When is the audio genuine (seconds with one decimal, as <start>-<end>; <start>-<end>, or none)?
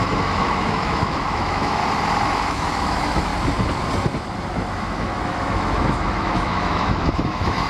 1.8-2.3; 3.3-4.7